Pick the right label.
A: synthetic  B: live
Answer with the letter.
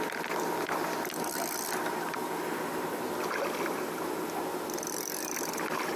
B